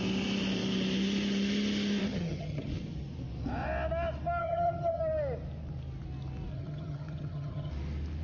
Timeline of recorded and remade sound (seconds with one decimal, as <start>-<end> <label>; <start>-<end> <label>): 0.0-2.0 recorded; 2.0-2.7 remade; 2.7-4.4 recorded; 4.4-5.0 remade; 5.0-6.5 recorded; 6.5-7.7 remade; 7.7-8.2 recorded